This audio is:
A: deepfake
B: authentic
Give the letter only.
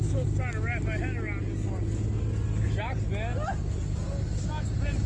B